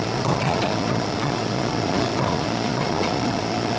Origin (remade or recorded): remade